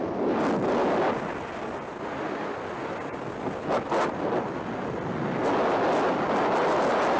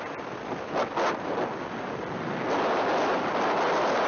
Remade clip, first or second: second